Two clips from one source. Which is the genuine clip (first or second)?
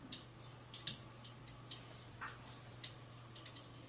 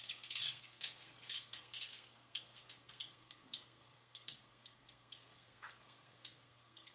first